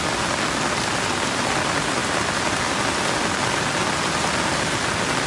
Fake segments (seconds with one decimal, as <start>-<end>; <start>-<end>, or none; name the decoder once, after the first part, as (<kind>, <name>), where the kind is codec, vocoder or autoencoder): none